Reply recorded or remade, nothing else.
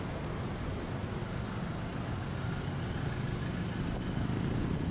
recorded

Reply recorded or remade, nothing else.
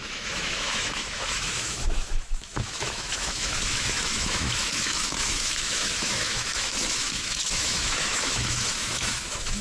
remade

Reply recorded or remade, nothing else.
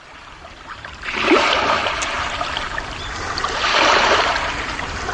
remade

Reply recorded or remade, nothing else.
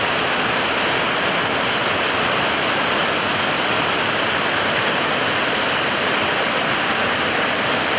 recorded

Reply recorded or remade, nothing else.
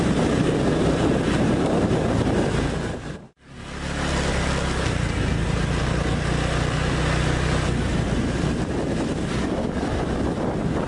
recorded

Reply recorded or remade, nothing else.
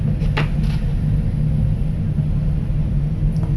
recorded